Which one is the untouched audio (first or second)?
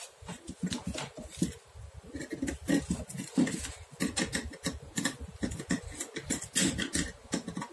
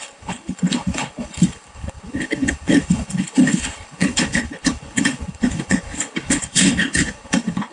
first